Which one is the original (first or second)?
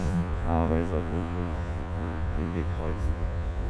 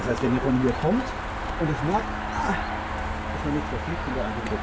second